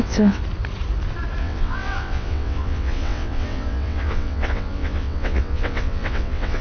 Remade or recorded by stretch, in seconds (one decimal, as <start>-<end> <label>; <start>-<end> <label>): 0.0-0.4 remade; 0.4-1.4 recorded; 1.4-6.6 remade